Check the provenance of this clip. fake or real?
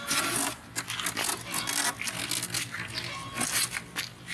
real